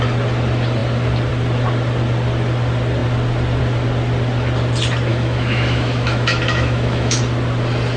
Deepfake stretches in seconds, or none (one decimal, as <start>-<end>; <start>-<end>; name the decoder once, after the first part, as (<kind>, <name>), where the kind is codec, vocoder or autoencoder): 5.1-7.2 (autoencoder, DAC-VAE)